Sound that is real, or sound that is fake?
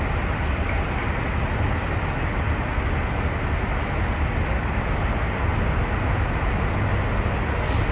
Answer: real